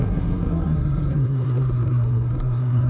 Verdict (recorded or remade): remade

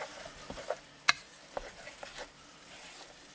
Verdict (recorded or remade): recorded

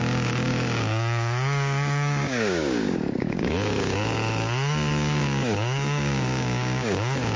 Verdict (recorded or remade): remade